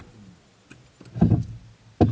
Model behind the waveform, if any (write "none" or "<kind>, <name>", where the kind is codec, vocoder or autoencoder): none